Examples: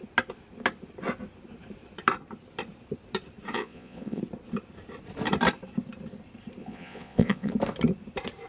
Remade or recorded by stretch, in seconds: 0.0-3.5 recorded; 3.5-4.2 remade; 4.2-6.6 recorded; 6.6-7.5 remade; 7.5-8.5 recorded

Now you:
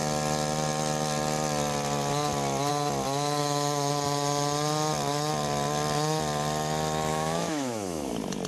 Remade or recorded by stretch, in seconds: 0.0-3.4 recorded; 3.4-3.9 remade; 3.9-7.1 recorded; 7.1-8.1 remade; 8.1-8.5 recorded

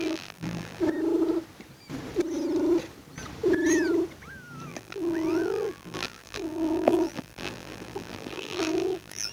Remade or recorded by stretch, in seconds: 0.0-0.8 remade; 0.8-4.7 recorded; 4.7-9.3 remade

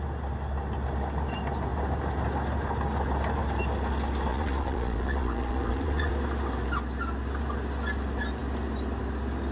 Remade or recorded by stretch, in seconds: 0.0-4.3 recorded; 4.3-6.1 remade; 6.1-9.5 recorded